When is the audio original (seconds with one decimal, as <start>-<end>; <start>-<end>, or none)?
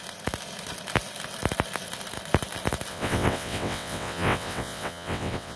0.0-2.9